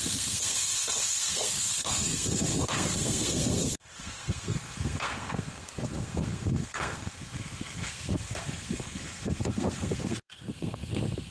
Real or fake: fake